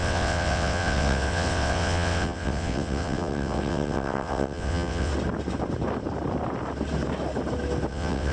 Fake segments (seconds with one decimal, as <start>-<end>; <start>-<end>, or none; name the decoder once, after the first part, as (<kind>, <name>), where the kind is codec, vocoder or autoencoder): 0.0-5.1 (vocoder, WaveNeXt); 7.9-8.3